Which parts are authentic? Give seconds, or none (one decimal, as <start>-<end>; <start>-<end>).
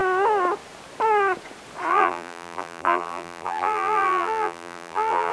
0.0-1.9